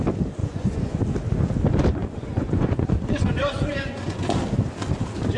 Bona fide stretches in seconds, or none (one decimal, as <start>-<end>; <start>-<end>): 0.0-0.4; 1.0-2.0; 4.4-5.4